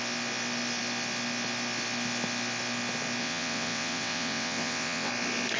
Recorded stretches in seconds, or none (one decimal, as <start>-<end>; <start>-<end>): 0.0-3.2; 5.1-5.6